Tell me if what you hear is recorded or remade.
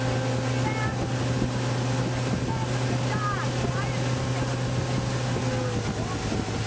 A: recorded